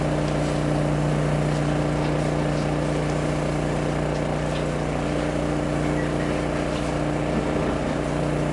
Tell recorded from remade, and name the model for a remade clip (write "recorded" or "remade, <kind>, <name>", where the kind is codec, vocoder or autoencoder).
recorded